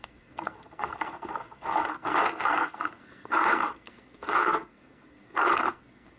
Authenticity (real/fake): fake